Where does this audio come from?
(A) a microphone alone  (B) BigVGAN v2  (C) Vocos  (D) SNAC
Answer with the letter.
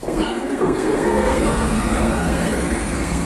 D